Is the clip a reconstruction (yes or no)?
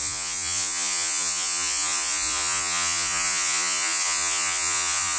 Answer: yes